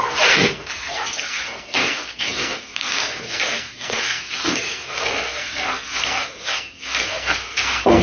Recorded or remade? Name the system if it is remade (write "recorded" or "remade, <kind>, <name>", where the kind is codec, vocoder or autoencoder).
remade, codec, SNAC